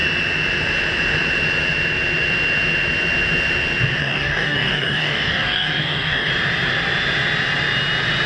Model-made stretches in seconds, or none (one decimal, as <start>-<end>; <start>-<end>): 4.0-6.3